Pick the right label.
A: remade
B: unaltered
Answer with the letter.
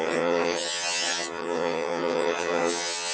A